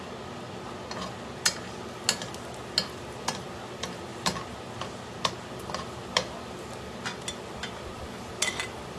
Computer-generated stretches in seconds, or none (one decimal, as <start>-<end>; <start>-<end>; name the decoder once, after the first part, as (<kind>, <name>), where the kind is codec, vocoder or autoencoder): none